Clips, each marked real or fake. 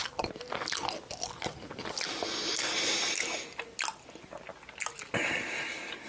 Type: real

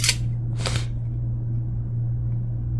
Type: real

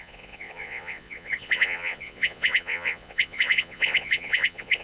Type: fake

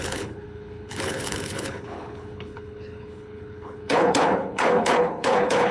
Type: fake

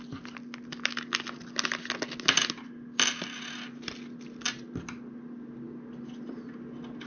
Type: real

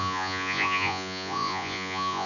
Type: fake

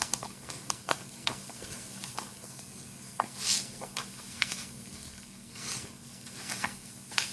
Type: fake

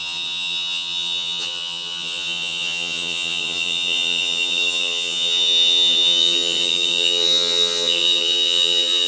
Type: fake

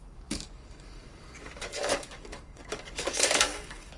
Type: fake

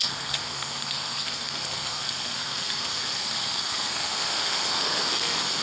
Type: fake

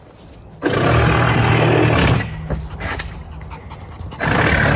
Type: real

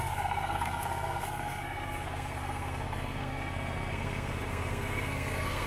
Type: fake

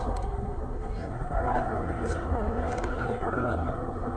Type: fake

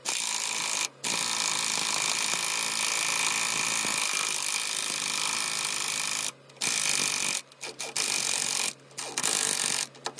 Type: real